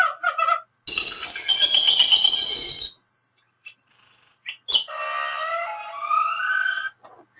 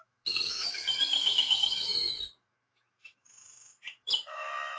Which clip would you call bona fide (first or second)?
first